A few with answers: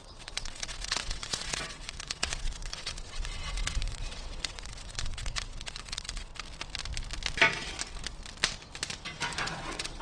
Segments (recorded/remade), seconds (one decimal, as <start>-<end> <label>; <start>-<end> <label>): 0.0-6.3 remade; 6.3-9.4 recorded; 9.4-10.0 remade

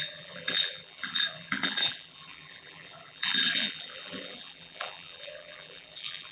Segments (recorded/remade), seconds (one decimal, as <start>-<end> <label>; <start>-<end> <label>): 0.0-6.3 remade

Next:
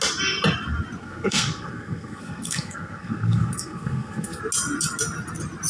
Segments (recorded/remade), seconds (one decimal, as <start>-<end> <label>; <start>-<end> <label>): 0.0-1.0 recorded; 1.0-4.4 remade; 4.4-5.7 recorded

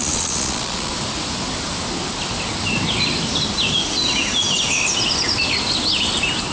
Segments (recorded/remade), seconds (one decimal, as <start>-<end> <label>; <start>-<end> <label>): 0.0-0.9 remade; 0.9-6.5 recorded

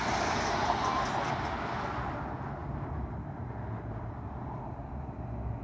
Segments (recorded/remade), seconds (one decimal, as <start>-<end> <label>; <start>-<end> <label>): 0.0-5.6 recorded

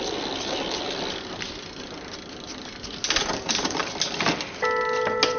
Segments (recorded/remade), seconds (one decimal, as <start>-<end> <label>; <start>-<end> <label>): 0.0-3.2 recorded; 3.2-3.8 remade; 3.8-5.4 recorded

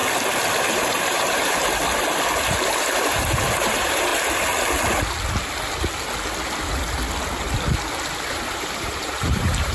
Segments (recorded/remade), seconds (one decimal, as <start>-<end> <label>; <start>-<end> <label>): 0.0-0.6 recorded; 0.6-1.6 remade; 1.6-2.6 recorded; 2.6-4.1 remade; 4.1-8.3 recorded; 8.3-9.7 remade

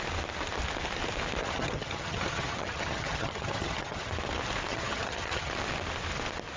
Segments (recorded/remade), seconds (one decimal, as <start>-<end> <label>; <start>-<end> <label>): 0.0-1.4 recorded; 1.4-4.1 remade; 4.1-4.7 recorded; 4.7-5.5 remade; 5.5-6.6 recorded